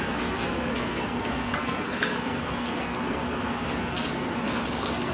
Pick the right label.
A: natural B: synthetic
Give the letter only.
B